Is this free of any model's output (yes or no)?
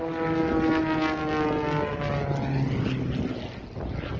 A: yes